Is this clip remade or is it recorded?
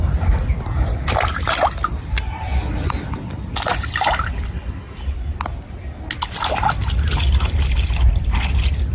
recorded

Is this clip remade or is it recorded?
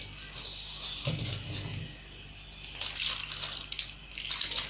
recorded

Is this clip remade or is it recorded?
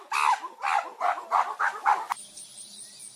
recorded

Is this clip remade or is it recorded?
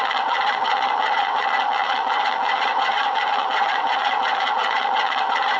remade